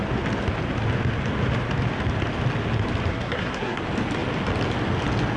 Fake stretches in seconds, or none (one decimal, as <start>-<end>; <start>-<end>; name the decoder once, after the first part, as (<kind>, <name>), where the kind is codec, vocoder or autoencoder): 3.1-3.8 (codec, SNAC)